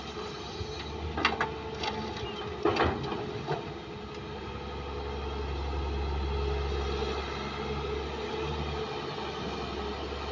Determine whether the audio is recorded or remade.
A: recorded